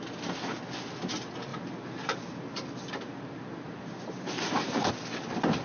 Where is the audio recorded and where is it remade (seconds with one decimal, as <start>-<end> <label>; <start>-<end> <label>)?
0.0-1.5 recorded; 1.5-4.9 remade; 4.9-5.6 recorded